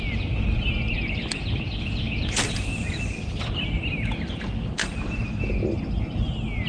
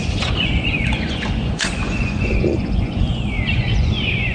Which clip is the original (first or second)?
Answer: first